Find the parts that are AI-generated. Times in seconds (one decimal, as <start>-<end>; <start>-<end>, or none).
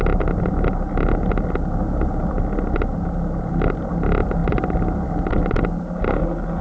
none